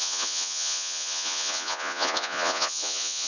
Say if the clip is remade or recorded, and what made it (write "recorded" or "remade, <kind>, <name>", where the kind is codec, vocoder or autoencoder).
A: remade, vocoder, Vocos